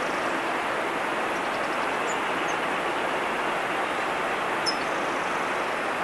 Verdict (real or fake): real